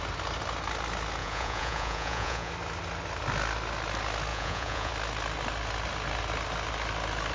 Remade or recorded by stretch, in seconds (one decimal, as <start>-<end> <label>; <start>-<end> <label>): 0.0-1.2 recorded; 1.2-2.5 remade; 2.5-4.3 recorded; 4.3-4.9 remade; 4.9-7.3 recorded